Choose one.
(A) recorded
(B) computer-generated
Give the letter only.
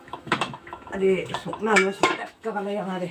B